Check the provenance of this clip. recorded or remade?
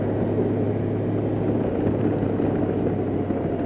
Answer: recorded